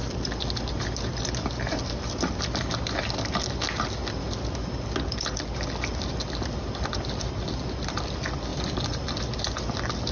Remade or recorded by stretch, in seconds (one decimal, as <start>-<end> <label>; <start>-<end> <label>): 0.0-8.5 recorded; 8.5-10.1 remade

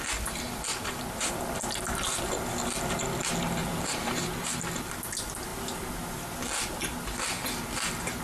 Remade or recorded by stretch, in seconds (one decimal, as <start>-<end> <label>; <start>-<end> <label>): 0.0-0.7 recorded; 0.7-1.3 remade; 1.3-3.6 recorded; 3.6-4.3 remade; 4.3-8.2 recorded

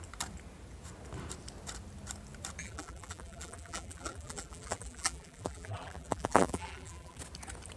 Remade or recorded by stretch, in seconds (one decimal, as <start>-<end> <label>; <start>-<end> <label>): 0.0-2.6 recorded; 2.6-7.2 remade; 7.2-7.8 recorded

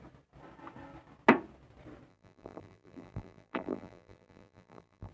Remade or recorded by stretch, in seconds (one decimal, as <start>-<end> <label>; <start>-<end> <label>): 0.0-2.1 recorded; 2.1-5.1 remade

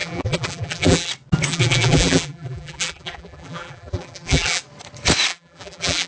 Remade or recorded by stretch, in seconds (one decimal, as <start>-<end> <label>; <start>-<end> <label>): 0.0-1.1 remade; 1.1-1.5 recorded; 1.5-4.6 remade; 4.6-5.3 recorded; 5.3-6.1 remade